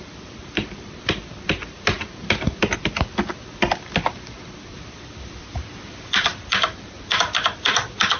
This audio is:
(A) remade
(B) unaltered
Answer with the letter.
A